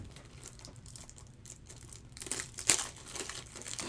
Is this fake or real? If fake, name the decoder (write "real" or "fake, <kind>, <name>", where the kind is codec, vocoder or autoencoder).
fake, vocoder, BigVGAN v2